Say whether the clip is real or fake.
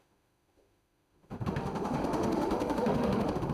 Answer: fake